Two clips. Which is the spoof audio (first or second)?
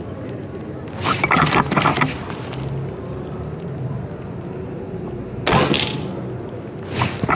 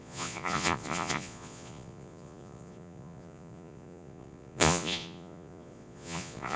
second